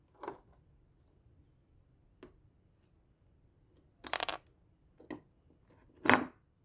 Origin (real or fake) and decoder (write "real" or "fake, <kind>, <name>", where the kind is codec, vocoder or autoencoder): real